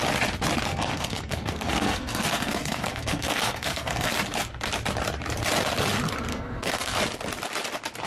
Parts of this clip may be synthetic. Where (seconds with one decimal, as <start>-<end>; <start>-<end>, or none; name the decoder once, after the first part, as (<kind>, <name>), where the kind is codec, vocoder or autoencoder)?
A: 0.7-4.1 (codec, SNAC); 6.3-7.0

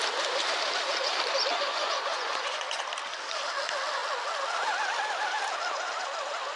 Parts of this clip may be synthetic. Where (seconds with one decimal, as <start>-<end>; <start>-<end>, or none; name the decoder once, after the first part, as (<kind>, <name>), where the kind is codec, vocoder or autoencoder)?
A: 1.5-2.8 (vocoder, Vocos)

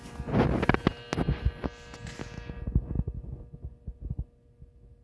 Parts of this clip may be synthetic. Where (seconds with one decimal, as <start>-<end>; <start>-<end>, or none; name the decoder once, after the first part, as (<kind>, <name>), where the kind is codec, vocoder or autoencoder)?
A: none

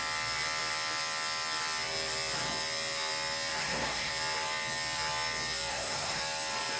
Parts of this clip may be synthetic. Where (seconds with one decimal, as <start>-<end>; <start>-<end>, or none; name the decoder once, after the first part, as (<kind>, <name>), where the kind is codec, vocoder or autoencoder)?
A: 3.6-4.1 (codec, SNAC); 5.7-6.2

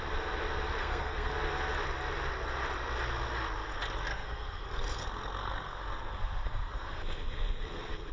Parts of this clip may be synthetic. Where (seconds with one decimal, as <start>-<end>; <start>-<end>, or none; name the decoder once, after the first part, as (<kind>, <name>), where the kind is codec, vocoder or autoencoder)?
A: 0.8-1.3 (codec, SNAC); 4.1-8.1

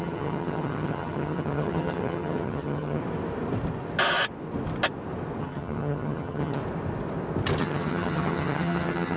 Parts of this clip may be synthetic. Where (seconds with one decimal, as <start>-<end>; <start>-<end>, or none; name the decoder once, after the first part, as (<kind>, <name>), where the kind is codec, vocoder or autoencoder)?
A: 0.0-3.0 (vocoder, HiFi-GAN); 5.4-6.6; 7.6-9.2

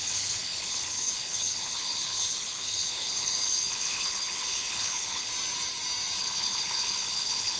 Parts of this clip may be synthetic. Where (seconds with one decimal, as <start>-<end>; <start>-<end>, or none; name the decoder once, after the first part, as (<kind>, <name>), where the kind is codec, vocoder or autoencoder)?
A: 0.0-5.3 (codec, HILCodec); 6.2-7.6